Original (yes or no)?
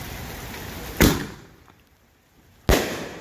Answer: yes